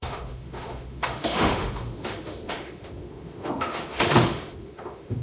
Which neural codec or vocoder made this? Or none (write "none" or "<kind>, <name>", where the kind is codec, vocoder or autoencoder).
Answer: autoencoder, DAC-VAE